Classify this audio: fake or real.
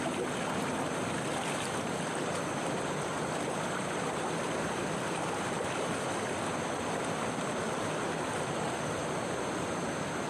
real